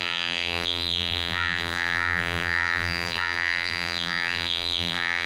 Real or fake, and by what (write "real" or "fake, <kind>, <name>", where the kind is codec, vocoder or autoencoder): fake, vocoder, BigVGAN v2